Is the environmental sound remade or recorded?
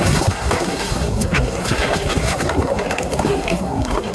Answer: remade